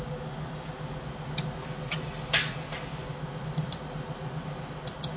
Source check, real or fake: real